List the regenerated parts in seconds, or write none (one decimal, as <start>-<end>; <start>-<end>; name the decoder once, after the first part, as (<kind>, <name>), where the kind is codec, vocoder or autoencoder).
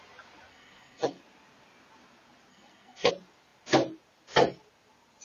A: 0.5-1.2 (codec, SNAC); 2.5-3.1